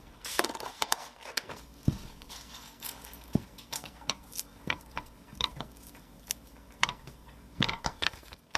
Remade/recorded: remade